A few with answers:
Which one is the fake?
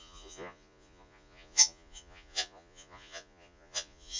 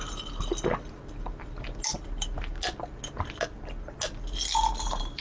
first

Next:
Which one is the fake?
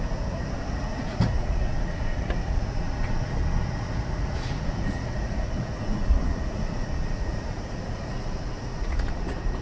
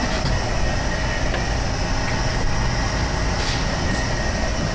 first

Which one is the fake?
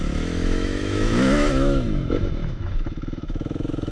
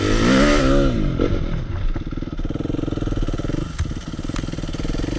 first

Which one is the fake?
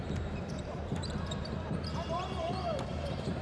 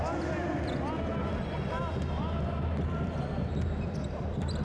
first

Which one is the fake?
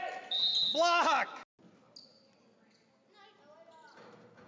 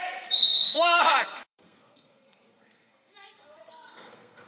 second